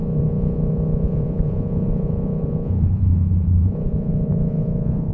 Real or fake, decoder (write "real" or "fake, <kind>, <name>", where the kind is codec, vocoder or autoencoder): fake, vocoder, Vocos